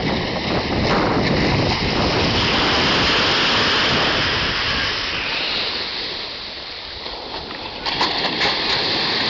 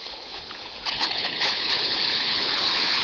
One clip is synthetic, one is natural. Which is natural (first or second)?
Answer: first